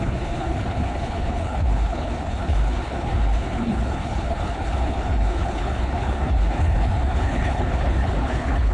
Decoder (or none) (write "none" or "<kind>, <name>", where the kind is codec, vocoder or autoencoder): codec, HILCodec